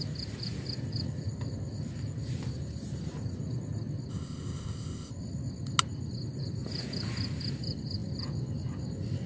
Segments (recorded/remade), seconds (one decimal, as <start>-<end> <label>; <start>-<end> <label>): 0.0-4.1 recorded; 4.1-5.1 remade; 5.1-9.3 recorded